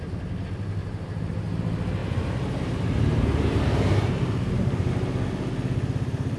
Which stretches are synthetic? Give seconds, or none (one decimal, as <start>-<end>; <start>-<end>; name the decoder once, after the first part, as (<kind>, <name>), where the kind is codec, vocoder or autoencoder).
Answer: 0.8-1.6 (vocoder, BigVGAN v2); 2.0-4.9

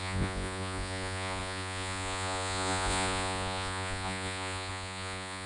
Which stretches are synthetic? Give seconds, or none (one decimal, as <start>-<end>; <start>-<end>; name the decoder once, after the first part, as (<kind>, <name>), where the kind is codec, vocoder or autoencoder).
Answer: 0.0-5.5 (vocoder, Vocos)